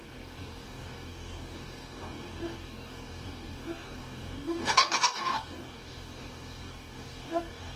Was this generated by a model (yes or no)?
yes